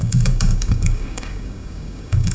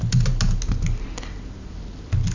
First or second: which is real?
second